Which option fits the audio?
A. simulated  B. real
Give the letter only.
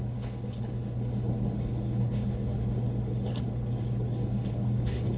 A